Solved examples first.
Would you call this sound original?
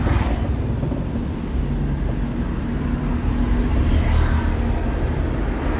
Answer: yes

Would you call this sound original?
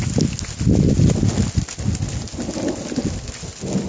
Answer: yes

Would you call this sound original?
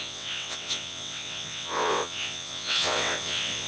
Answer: no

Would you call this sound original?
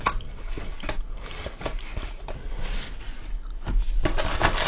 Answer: yes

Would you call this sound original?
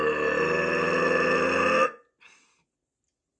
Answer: yes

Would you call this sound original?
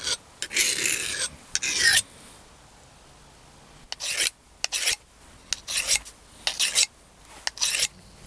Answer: yes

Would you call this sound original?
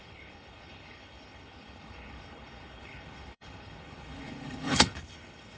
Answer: no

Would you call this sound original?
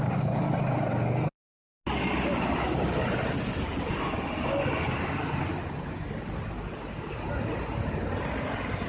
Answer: yes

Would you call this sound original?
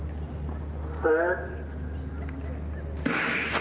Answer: yes